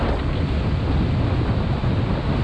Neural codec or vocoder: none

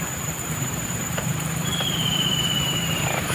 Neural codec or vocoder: vocoder, BigVGAN v2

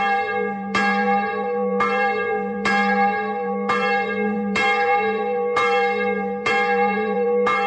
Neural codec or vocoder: vocoder, BigVGAN v2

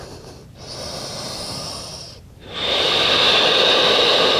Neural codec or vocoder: none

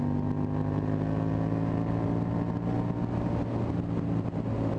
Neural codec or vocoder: none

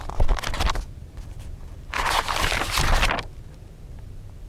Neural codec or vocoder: none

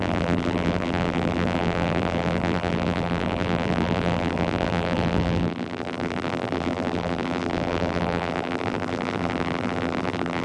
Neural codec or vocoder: vocoder, BigVGAN v2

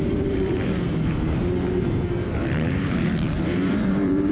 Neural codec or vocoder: vocoder, BigVGAN v2